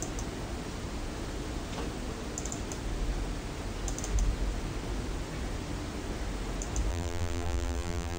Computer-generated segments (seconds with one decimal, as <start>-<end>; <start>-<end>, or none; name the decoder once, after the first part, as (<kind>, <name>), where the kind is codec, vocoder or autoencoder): 6.9-8.2 (vocoder, BigVGAN v2)